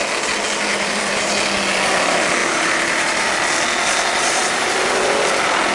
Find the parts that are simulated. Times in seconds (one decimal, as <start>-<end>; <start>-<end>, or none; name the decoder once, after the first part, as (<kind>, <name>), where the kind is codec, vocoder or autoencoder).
0.7-1.3 (vocoder, BigVGAN v2); 2.4-3.3; 4.4-5.3